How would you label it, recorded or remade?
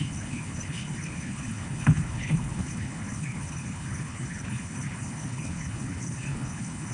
remade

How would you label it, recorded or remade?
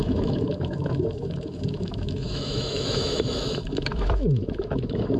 remade